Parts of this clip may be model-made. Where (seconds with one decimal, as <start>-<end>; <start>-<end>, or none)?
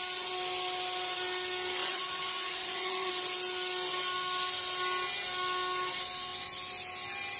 1.8-3.1